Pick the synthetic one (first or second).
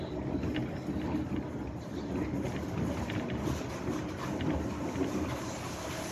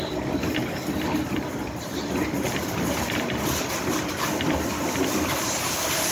second